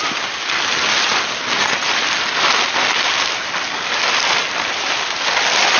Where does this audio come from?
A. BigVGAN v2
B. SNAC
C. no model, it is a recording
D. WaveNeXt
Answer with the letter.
C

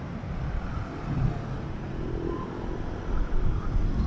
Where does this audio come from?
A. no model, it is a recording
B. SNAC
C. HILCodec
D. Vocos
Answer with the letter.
A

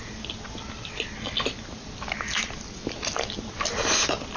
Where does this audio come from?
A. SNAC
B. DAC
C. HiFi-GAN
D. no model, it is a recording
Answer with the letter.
D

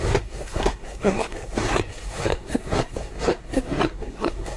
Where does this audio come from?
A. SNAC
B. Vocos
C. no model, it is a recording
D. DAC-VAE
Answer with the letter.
A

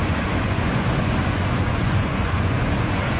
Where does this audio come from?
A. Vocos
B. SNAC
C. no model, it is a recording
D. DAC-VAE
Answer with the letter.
A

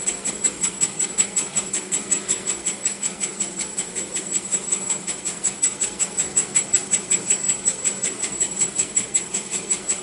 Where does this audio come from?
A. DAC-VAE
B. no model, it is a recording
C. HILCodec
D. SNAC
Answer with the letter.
D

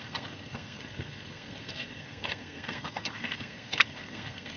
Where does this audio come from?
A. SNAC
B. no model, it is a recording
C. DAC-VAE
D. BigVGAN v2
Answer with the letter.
A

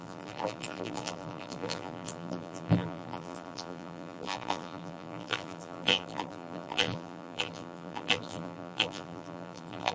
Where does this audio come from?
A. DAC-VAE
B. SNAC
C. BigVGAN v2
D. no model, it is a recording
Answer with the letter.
C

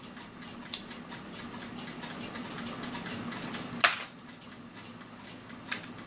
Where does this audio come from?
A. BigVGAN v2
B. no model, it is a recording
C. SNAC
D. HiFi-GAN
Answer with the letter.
B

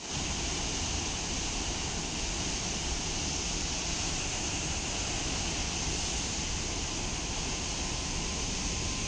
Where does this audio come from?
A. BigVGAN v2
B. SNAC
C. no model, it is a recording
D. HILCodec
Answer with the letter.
C